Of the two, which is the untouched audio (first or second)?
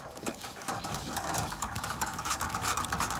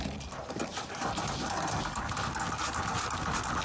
second